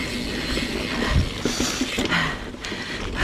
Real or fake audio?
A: real